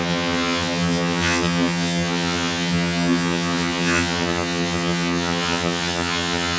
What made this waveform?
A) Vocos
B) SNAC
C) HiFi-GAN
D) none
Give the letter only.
C